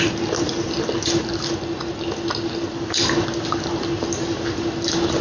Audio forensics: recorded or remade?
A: recorded